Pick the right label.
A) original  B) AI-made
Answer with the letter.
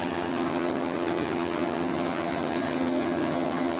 B